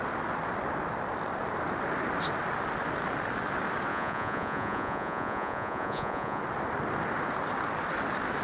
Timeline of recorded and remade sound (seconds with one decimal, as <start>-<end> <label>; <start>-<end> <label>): 0.0-3.9 recorded; 3.9-6.4 remade; 6.4-8.4 recorded